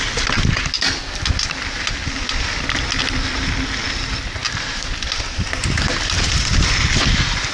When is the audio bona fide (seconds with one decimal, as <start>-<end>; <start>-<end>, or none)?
0.0-7.5